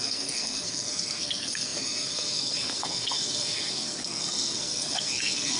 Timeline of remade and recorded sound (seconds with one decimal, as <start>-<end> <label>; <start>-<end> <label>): 0.0-5.6 remade